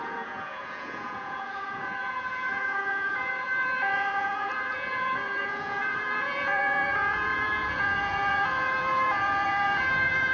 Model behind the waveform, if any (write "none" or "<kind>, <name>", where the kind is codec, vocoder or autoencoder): vocoder, Vocos